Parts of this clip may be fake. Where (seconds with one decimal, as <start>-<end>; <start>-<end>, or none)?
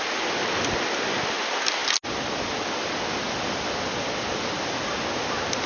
none